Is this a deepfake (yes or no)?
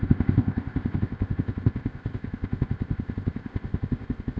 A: yes